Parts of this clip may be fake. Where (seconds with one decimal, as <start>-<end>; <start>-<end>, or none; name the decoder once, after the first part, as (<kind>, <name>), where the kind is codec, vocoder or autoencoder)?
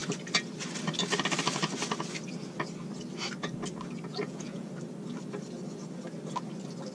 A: 4.1-4.7 (vocoder, Vocos)